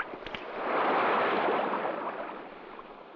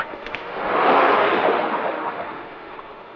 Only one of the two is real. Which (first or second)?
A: first